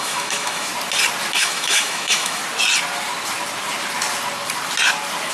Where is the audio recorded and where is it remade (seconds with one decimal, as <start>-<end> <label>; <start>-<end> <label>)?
0.0-0.7 remade; 0.7-1.4 recorded; 1.4-2.4 remade; 2.4-5.3 recorded